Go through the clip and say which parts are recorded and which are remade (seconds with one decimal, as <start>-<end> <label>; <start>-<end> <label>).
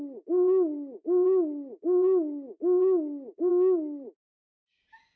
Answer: 0.0-3.5 remade; 3.5-5.2 recorded